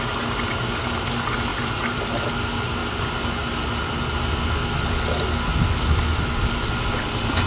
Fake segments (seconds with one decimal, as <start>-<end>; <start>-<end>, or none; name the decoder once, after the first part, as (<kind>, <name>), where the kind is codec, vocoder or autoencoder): 1.5-2.3 (vocoder, BigVGAN v2)